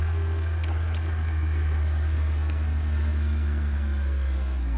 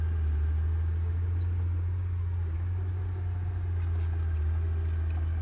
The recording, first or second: second